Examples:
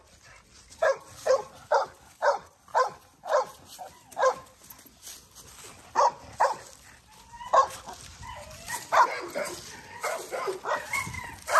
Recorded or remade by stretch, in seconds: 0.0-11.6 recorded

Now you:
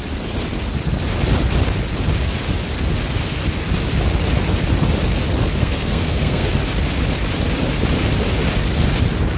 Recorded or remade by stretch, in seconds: 0.0-5.6 recorded; 5.6-6.5 remade; 6.5-9.4 recorded

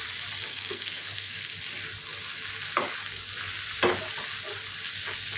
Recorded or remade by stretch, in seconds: 0.0-0.5 recorded; 0.5-1.5 remade; 1.5-5.4 recorded